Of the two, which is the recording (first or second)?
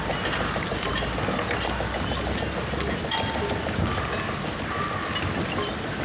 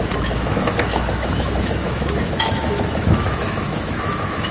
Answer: first